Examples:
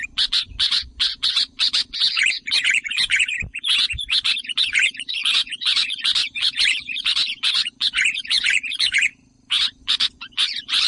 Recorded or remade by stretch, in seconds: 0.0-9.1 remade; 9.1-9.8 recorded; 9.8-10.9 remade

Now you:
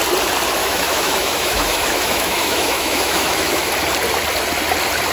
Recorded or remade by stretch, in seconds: 0.0-0.6 recorded; 0.6-3.7 remade; 3.7-5.1 recorded

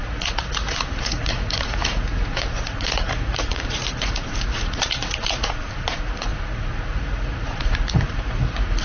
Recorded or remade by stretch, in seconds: 0.0-8.8 remade

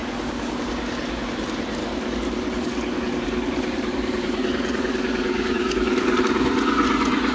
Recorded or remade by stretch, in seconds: 0.0-0.6 remade; 0.6-1.8 recorded; 1.8-6.2 remade; 6.2-7.3 recorded

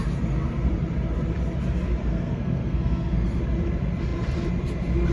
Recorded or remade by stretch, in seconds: 0.0-2.0 recorded; 2.0-3.4 remade; 3.4-5.1 recorded

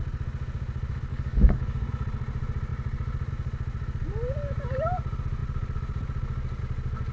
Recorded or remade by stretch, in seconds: 0.0-1.1 recorded; 1.1-1.9 remade; 1.9-7.1 recorded

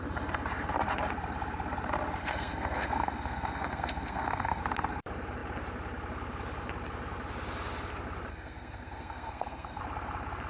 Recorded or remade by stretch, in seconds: 0.0-2.2 recorded; 2.2-4.6 remade; 4.6-8.3 recorded; 8.3-9.8 remade; 9.8-10.5 recorded

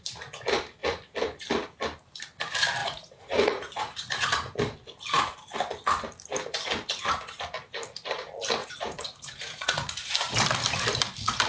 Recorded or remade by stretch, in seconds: 0.0-2.8 recorded; 2.8-4.6 remade; 4.6-8.6 recorded; 8.6-10.1 remade; 10.1-11.5 recorded